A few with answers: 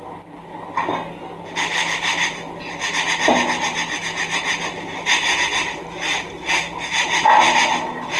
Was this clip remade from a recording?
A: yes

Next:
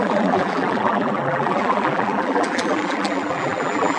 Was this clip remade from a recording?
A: yes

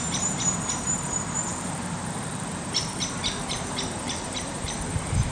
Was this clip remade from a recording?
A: yes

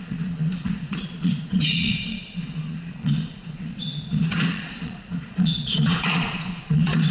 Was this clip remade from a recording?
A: yes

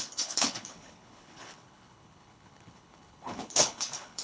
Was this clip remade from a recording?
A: yes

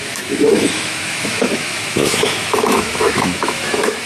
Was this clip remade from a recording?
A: yes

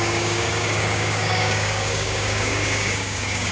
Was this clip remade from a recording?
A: yes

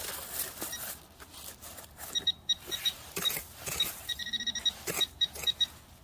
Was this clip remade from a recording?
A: no